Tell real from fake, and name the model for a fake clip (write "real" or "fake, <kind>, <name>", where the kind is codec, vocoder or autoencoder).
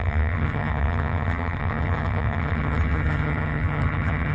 fake, vocoder, HiFi-GAN